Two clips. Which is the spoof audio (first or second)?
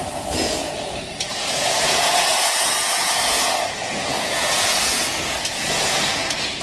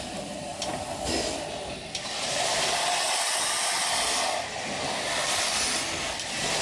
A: first